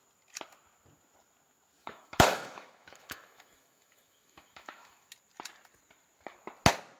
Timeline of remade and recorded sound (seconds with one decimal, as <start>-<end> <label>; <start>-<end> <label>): 0.0-1.8 recorded; 1.8-5.1 remade; 5.1-7.0 recorded